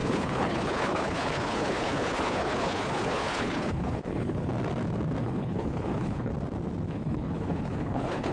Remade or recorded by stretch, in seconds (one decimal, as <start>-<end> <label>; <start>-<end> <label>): 0.0-4.5 remade; 4.5-5.2 recorded; 5.2-6.3 remade; 6.3-6.9 recorded; 6.9-8.3 remade